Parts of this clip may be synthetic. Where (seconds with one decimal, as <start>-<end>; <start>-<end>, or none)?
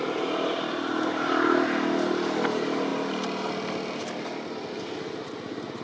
none